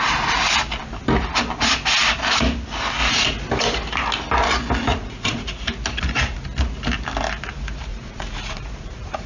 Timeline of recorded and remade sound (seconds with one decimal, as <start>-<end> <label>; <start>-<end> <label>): 0.0-4.9 recorded; 4.9-5.6 remade; 5.6-7.9 recorded; 7.9-9.3 remade